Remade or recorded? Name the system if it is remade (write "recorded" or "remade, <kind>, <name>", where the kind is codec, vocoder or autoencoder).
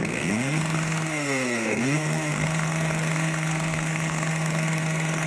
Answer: remade, codec, SNAC